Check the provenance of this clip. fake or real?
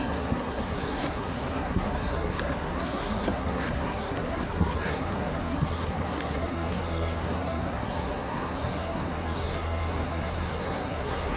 fake